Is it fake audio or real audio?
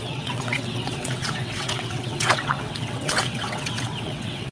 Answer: fake